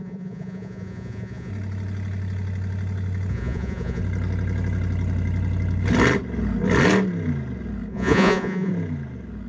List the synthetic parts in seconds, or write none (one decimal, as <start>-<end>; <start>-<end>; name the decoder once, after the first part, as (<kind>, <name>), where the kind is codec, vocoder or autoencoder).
0.0-1.5 (vocoder, Vocos); 3.3-4.0; 7.9-8.7